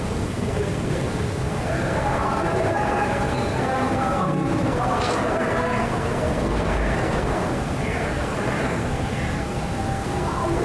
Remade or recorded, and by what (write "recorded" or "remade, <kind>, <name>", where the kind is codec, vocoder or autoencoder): remade, codec, SNAC